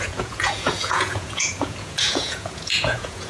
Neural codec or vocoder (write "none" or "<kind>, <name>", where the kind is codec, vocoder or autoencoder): vocoder, Vocos